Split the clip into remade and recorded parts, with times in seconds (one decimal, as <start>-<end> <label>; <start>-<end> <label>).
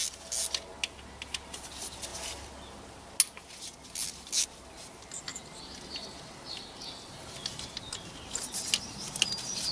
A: 0.0-9.7 recorded